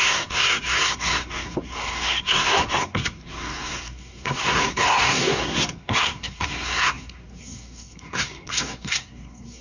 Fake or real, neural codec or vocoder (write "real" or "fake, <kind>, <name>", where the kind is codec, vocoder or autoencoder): fake, codec, SNAC